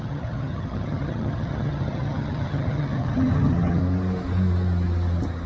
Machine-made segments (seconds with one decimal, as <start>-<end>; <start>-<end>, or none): 0.0-3.8